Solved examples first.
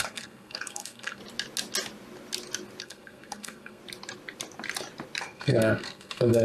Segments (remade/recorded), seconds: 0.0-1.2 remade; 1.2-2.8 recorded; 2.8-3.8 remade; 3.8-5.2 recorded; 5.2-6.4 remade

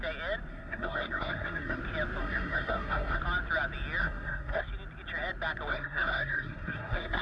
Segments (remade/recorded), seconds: 0.0-0.5 recorded; 0.5-1.8 remade; 1.8-2.2 recorded; 2.2-3.2 remade; 3.2-4.0 recorded; 4.0-4.6 remade; 4.6-5.7 recorded; 5.7-7.2 remade

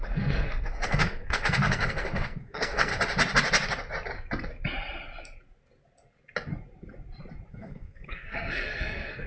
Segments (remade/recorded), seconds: 0.0-2.9 remade; 2.9-7.5 recorded; 7.5-9.3 remade